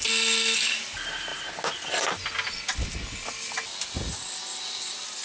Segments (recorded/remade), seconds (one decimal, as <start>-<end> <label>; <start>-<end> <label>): 0.0-5.2 recorded